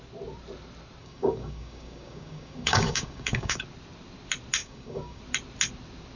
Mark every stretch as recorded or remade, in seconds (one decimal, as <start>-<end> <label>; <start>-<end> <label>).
0.0-1.0 recorded; 1.0-3.6 remade; 3.6-4.6 recorded; 4.6-5.2 remade; 5.2-6.2 recorded